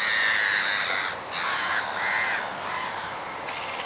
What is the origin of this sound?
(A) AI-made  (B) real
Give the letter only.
B